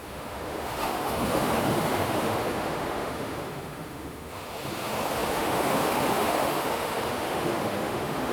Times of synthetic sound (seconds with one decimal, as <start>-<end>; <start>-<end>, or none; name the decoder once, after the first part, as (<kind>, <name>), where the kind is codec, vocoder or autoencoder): 0.0-8.3 (autoencoder, DAC-VAE)